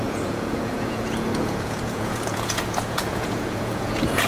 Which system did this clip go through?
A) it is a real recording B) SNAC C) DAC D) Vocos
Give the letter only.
D